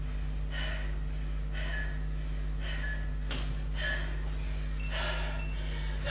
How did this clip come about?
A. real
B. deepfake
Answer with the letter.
A